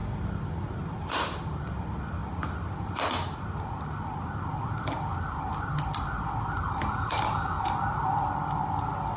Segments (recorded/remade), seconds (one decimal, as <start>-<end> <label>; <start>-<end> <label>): 0.0-1.6 remade; 1.6-9.2 recorded